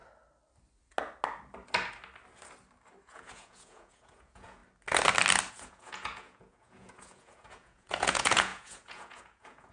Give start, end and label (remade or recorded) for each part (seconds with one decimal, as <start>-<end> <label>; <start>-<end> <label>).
0.0-3.0 recorded; 3.0-4.6 remade; 4.6-5.5 recorded; 5.5-9.7 remade